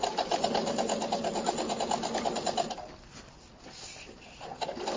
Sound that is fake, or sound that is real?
real